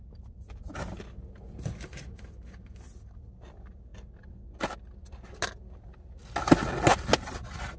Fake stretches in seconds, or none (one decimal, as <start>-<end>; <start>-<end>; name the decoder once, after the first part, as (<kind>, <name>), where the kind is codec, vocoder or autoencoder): none